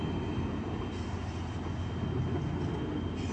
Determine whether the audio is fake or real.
real